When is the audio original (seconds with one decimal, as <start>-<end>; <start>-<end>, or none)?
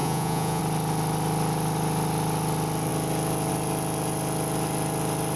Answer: 0.6-5.4